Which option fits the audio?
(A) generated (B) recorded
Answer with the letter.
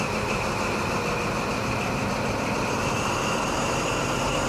B